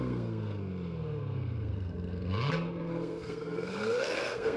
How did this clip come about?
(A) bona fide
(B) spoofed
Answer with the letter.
B